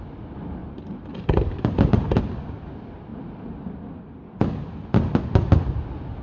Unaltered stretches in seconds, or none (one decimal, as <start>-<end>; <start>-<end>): 0.0-0.6; 2.2-6.2